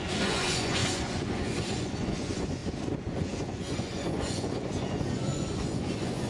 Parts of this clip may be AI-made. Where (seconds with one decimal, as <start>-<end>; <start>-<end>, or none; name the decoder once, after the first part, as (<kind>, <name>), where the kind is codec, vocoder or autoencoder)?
0.0-2.6 (vocoder, Vocos); 3.2-6.3

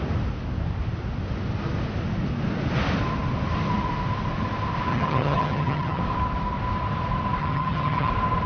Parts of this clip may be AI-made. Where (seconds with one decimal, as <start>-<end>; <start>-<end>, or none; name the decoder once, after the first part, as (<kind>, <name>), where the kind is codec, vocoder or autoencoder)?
4.9-6.0 (vocoder, HiFi-GAN); 7.4-8.1

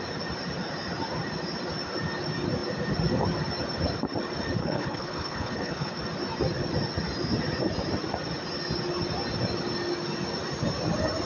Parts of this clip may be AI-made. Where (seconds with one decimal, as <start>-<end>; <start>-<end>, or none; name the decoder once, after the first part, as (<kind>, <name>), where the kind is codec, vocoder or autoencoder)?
4.6-6.0 (codec, HILCodec)

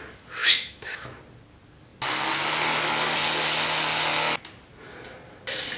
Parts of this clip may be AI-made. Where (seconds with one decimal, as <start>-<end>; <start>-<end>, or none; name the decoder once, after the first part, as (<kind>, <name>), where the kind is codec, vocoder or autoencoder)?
0.4-1.2 (autoencoder, DAC-VAE)

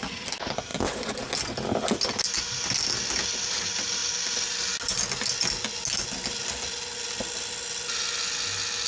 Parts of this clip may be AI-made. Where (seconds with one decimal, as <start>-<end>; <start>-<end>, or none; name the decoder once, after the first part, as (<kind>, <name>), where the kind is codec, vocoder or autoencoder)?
none